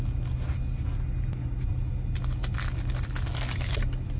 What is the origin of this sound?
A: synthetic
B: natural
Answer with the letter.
B